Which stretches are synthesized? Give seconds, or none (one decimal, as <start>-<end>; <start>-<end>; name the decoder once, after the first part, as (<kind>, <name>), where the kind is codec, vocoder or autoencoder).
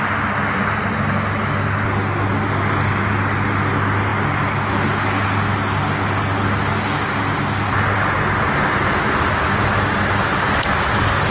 none